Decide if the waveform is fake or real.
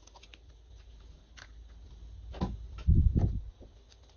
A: real